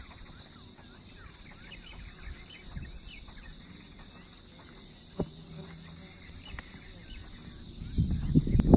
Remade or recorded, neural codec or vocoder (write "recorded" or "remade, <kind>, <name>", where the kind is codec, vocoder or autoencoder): recorded